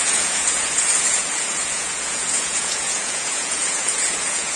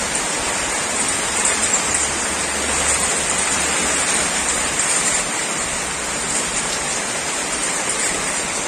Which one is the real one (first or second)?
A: second